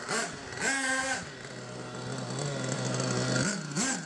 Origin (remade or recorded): recorded